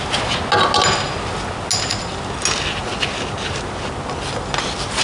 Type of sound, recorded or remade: recorded